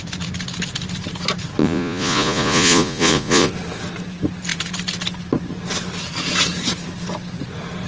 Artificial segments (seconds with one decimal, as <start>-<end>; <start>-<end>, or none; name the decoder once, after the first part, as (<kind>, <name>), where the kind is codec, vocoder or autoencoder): 1.6-3.5 (vocoder, Vocos)

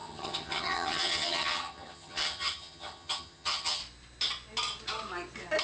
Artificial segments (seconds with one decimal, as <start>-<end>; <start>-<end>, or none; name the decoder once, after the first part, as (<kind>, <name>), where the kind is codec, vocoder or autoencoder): 0.0-3.8 (vocoder, HiFi-GAN)

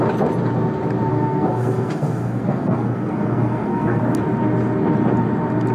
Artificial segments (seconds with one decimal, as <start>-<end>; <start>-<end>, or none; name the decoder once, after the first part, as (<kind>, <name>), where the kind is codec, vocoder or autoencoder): 1.1-4.0 (codec, SNAC)

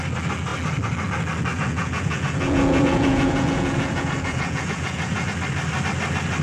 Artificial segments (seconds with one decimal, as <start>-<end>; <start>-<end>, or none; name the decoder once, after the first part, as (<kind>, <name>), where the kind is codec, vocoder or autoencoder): 1.5-5.3 (vocoder, Vocos)